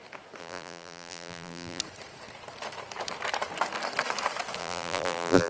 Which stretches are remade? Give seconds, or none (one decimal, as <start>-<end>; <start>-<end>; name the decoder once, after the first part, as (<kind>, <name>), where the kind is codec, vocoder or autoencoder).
0.4-1.8 (vocoder, BigVGAN v2); 4.6-5.5